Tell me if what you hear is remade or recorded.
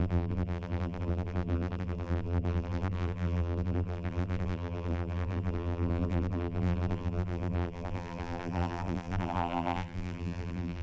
remade